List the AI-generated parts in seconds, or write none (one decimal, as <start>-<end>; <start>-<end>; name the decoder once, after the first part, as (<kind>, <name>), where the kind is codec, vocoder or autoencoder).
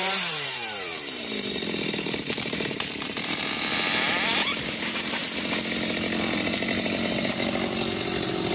0.0-5.2 (vocoder, BigVGAN v2)